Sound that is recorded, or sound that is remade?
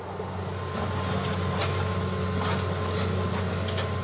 recorded